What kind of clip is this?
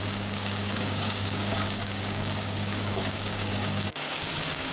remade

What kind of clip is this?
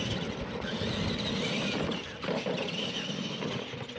recorded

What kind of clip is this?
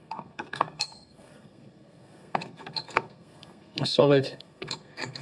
remade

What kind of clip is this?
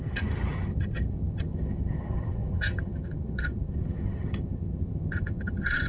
remade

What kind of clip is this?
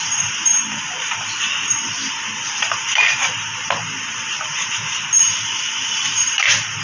remade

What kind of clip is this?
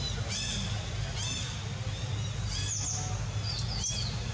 recorded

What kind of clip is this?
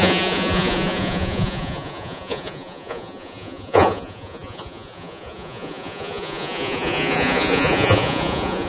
remade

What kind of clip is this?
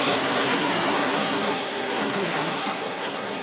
remade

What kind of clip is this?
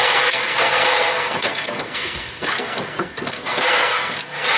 remade